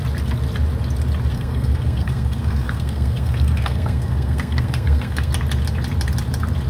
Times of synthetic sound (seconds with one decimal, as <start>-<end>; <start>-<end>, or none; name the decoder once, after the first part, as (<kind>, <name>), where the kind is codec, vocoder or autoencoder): 1.3-5.3 (codec, SNAC)